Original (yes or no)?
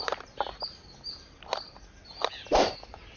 yes